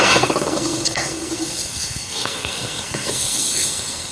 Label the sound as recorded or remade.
remade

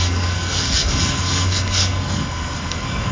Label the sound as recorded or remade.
remade